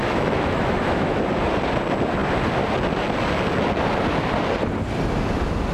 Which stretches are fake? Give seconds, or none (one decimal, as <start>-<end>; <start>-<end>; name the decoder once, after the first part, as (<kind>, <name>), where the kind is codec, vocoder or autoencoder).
0.0-1.2 (autoencoder, DAC-VAE)

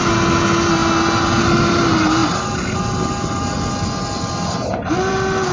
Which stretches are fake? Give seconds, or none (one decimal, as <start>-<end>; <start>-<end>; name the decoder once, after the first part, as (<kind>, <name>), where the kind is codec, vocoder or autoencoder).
none

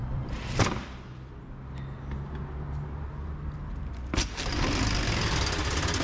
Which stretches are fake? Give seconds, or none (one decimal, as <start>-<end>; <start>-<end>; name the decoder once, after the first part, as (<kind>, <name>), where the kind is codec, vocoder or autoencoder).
0.0-1.4 (vocoder, BigVGAN v2)